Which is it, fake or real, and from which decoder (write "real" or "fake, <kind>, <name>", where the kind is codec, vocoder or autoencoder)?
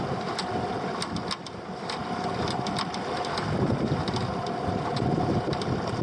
real